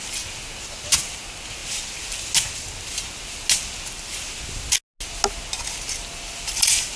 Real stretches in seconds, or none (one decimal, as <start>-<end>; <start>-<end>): 0.0-7.0